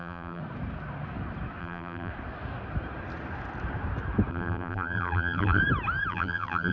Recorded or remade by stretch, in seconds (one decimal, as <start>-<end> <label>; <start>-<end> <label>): 0.0-0.4 remade; 0.4-1.6 recorded; 1.6-2.1 remade; 2.1-4.3 recorded; 4.3-5.6 remade; 5.6-6.1 recorded; 6.1-6.7 remade